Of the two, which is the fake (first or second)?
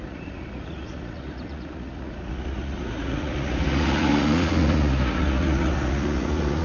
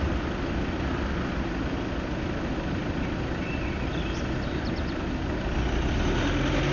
first